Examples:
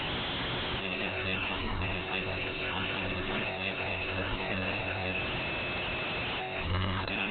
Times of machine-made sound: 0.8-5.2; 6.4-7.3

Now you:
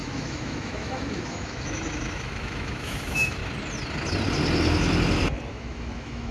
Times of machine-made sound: 0.0-3.4; 5.5-6.3

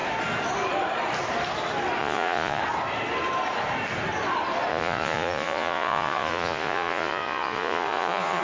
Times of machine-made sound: 2.0-2.6; 4.7-8.4